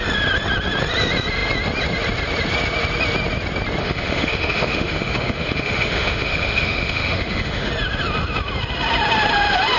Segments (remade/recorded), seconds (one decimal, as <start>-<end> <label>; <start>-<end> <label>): 0.0-3.8 recorded; 3.8-7.7 remade; 7.7-9.8 recorded